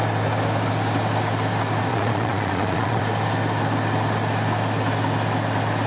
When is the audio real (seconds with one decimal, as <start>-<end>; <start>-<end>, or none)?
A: 0.0-1.9; 3.0-5.9